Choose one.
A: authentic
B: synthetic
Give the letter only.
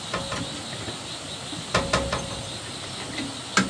A